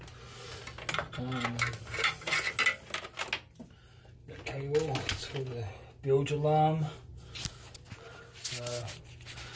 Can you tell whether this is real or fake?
real